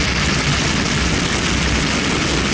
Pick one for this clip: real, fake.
real